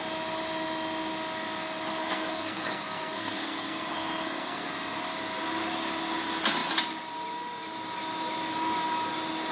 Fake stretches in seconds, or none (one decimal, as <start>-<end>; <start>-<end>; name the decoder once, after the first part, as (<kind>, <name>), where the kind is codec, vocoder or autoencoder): 2.0-4.7 (codec, SNAC)